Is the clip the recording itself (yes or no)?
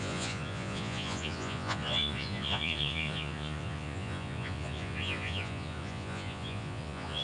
no